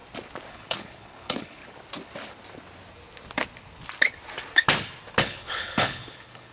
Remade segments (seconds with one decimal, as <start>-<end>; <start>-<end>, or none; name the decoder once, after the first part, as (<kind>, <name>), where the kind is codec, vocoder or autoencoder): 0.5-1.6 (codec, HILCodec); 5.2-6.5